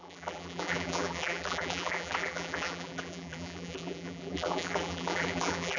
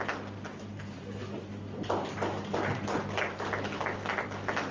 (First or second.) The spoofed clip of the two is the first